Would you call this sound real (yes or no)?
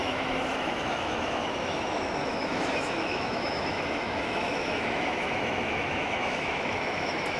no